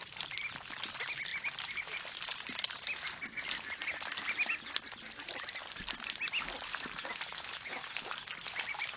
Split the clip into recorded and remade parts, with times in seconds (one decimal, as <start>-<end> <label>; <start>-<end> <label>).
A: 0.0-9.0 recorded